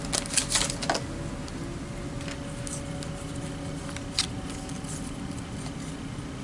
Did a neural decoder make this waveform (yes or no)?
no